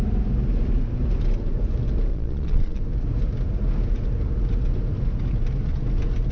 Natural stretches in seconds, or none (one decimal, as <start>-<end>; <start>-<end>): 0.0-2.1; 2.8-6.3